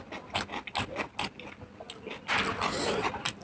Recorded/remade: recorded